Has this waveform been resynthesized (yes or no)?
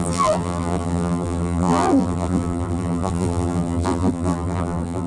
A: yes